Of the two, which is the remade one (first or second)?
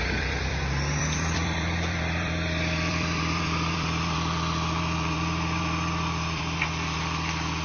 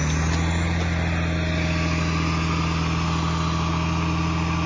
first